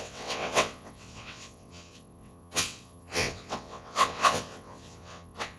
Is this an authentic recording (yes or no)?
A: no